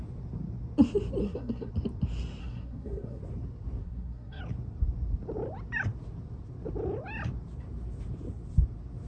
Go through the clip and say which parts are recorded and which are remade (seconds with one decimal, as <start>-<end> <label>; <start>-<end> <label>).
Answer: 0.0-1.2 recorded; 1.2-1.7 remade; 1.7-2.4 recorded; 2.4-3.2 remade; 3.2-3.8 recorded; 3.8-4.4 remade; 4.4-9.1 recorded